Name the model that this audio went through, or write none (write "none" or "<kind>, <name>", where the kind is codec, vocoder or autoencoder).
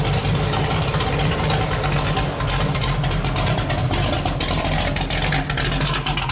none